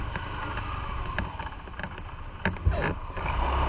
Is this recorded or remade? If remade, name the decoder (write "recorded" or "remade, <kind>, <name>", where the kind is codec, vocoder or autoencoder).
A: recorded